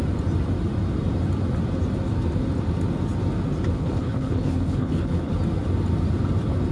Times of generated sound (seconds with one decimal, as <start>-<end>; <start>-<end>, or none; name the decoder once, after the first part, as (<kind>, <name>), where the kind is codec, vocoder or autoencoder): 3.7-5.3 (codec, HILCodec)